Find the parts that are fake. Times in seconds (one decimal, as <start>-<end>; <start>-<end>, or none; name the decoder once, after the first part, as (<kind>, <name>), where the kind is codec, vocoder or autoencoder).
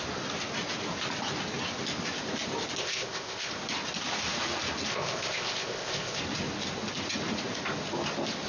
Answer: 2.8-3.5 (codec, ZipCodec); 4.9-6.2